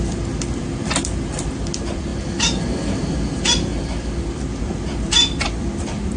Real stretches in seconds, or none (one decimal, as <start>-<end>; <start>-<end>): 2.1-2.6; 3.7-4.6

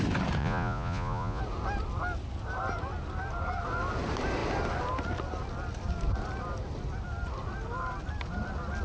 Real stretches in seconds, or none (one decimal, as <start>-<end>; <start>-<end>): 0.0-0.4; 1.4-8.8

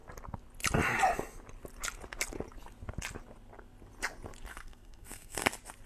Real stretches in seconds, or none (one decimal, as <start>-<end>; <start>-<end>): 0.0-4.5; 5.5-5.9

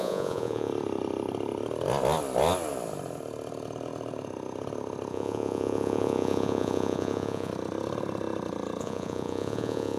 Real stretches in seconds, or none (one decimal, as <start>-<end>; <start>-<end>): 0.7-5.1; 7.5-8.8

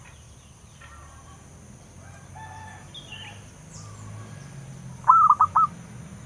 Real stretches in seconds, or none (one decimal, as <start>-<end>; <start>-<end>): 0.0-6.3

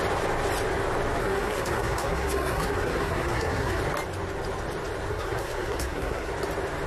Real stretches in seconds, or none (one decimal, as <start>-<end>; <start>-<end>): 0.0-1.2; 3.8-5.1; 6.3-6.9